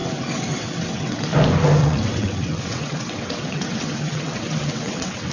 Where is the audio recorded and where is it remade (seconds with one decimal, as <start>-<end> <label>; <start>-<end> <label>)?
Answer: 0.0-1.3 remade; 1.3-1.8 recorded; 1.8-5.3 remade